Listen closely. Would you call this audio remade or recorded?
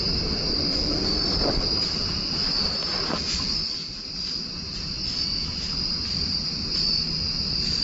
recorded